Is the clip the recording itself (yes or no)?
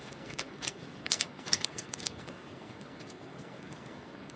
no